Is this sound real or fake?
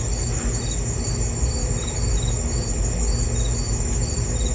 real